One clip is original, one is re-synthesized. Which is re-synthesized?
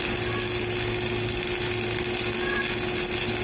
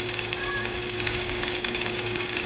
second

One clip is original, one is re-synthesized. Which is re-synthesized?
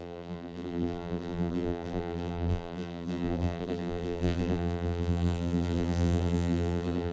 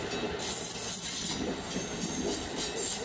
first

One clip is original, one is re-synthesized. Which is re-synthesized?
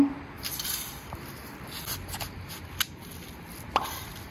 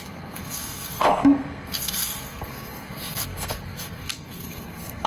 second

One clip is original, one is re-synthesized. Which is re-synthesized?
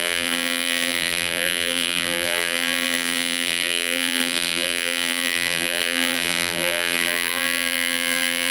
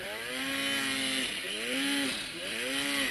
first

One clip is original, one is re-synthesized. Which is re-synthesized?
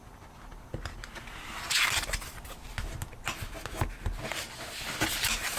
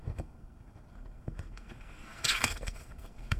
second